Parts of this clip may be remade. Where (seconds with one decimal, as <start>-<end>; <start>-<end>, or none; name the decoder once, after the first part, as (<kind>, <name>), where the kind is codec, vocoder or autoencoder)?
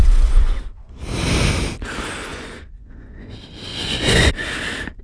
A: 0.0-0.9 (vocoder, Vocos); 2.3-3.3; 3.7-4.3